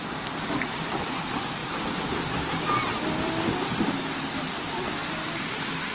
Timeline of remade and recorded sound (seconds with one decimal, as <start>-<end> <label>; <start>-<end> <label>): 0.0-5.9 recorded